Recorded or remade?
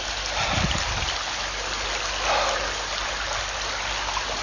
recorded